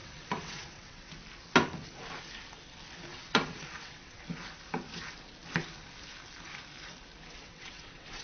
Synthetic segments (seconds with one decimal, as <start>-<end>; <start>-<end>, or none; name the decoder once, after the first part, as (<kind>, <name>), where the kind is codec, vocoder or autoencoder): 0.0-1.1 (vocoder, WaveNeXt); 3.1-4.2; 7.3-8.2